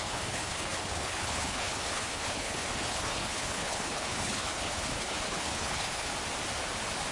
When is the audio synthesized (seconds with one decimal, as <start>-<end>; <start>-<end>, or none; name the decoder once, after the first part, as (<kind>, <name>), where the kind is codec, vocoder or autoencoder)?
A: 0.0-6.1 (codec, HILCodec)